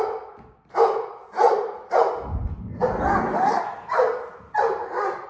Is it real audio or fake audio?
real